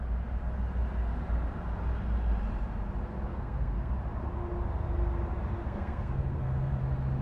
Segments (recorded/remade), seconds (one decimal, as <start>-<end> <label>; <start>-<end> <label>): 0.0-3.3 recorded; 3.3-3.9 remade; 3.9-5.6 recorded; 5.6-6.8 remade; 6.8-7.2 recorded